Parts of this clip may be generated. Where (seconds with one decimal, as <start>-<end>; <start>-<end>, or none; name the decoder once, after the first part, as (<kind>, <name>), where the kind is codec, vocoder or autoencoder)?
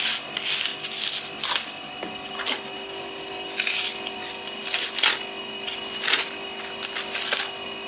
none